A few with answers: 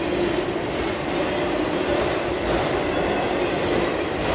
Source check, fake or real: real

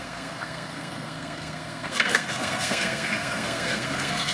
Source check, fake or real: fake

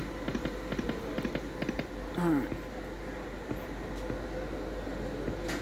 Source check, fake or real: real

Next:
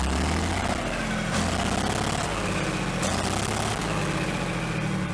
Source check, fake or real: real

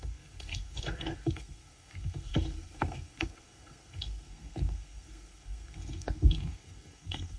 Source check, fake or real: fake